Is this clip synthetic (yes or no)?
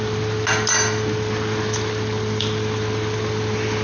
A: no